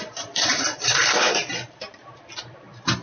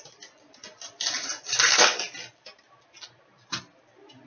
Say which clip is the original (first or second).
second